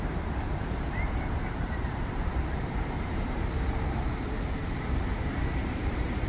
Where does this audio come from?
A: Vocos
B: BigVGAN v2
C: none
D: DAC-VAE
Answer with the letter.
B